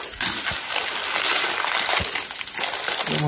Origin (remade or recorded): recorded